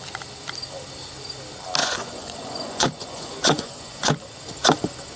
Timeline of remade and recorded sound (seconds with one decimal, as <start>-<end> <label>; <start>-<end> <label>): 0.0-1.8 recorded; 1.8-4.2 remade; 4.2-5.2 recorded